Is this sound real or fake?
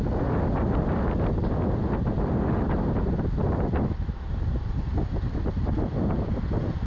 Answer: real